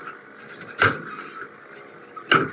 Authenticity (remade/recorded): recorded